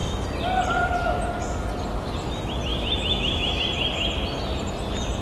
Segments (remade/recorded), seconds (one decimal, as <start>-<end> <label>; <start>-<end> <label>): 0.0-2.7 recorded; 2.7-3.5 remade; 3.5-5.2 recorded